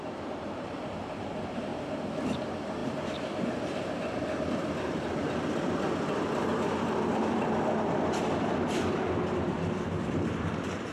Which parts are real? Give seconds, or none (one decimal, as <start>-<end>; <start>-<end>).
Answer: 1.7-2.4; 6.5-8.6